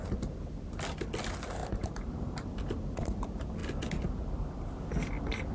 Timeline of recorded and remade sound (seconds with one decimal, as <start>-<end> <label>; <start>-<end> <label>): 0.0-1.6 recorded; 1.6-2.6 remade; 2.6-5.5 recorded